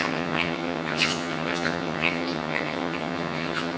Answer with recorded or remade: remade